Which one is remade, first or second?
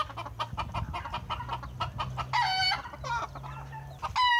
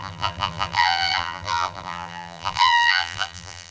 second